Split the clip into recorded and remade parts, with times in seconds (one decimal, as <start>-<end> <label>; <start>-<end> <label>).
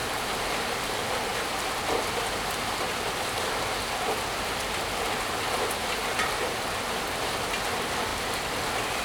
0.0-1.1 remade; 1.1-9.0 recorded